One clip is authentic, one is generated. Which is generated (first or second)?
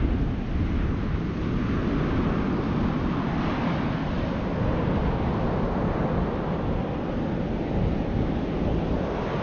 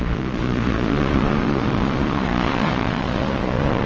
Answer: second